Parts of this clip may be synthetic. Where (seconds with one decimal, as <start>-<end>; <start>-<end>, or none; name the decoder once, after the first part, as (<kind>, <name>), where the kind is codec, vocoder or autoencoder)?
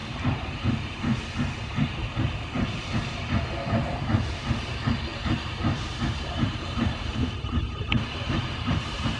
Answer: 0.0-1.2 (vocoder, BigVGAN v2); 5.1-9.2